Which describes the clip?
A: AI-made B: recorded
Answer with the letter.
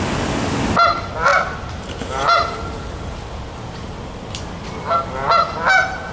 B